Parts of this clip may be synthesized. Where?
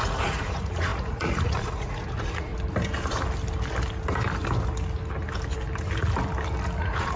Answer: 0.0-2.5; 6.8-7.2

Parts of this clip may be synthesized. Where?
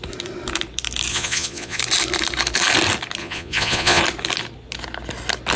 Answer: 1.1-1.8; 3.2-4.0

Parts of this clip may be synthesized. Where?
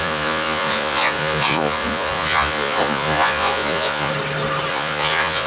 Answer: 0.0-4.1; 4.7-5.5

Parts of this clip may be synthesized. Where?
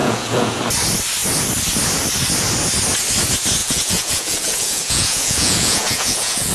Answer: 0.0-0.6; 3.6-6.5